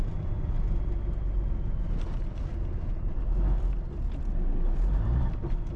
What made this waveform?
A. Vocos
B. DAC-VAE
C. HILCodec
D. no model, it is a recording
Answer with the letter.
D